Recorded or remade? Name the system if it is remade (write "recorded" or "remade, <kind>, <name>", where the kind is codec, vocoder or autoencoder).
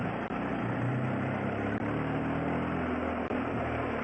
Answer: recorded